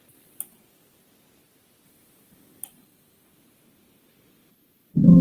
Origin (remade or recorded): recorded